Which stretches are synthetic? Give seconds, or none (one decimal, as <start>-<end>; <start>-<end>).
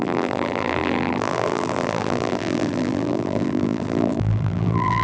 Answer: 0.0-5.0